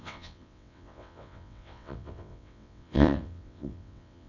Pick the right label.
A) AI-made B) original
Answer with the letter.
A